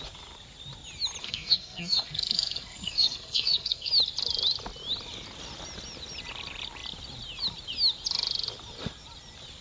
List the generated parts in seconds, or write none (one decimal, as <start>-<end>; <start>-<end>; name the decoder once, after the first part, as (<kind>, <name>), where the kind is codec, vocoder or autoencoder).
1.2-3.9 (codec, SNAC)